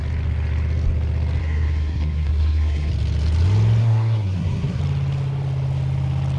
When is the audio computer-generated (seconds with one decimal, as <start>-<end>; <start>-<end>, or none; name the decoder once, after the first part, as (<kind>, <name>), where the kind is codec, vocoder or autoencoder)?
1.4-2.9 (codec, SNAC); 3.8-4.8